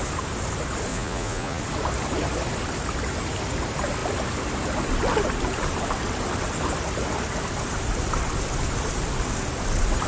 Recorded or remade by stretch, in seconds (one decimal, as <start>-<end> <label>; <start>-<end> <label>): 0.0-0.9 recorded; 0.9-1.6 remade; 1.6-10.1 recorded